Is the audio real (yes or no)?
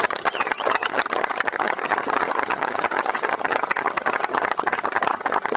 no